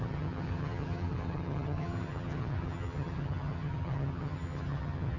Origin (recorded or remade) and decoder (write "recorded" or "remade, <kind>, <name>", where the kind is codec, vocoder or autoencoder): remade, vocoder, HiFi-GAN